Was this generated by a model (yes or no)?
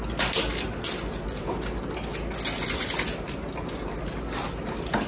no